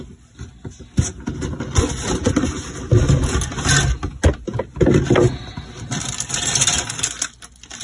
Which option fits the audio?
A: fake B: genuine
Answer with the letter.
B